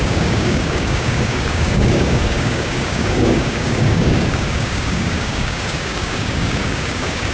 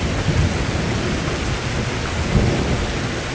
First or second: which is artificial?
first